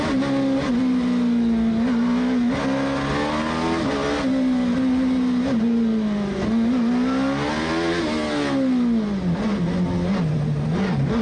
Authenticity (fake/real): real